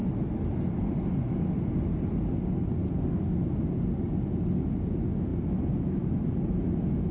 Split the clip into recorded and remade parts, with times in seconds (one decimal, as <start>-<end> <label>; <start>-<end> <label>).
0.0-7.1 recorded